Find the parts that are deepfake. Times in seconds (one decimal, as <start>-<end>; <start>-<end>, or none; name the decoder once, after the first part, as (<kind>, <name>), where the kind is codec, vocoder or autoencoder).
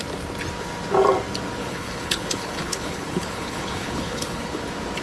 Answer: 1.6-4.6 (codec, HILCodec)